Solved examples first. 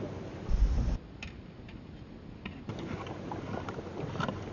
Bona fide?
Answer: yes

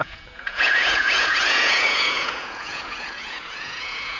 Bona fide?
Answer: no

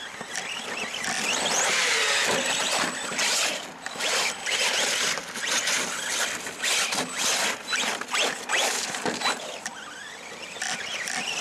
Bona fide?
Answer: yes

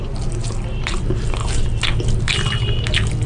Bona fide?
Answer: yes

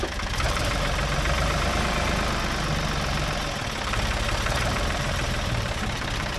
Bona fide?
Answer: no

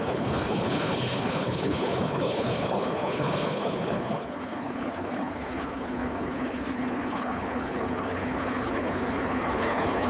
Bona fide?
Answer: no